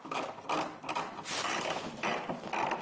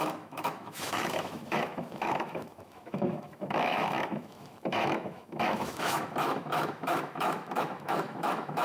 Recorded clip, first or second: first